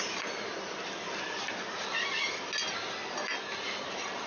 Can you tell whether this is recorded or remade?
recorded